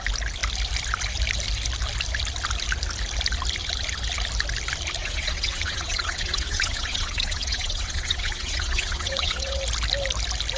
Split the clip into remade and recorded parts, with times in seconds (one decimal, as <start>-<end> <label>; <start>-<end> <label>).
0.0-5.0 recorded; 5.0-9.6 remade; 9.6-10.6 recorded